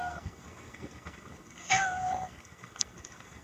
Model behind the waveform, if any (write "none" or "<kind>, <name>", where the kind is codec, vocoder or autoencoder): codec, SNAC